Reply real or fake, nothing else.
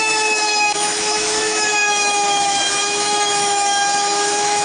fake